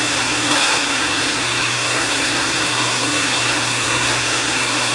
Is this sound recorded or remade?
remade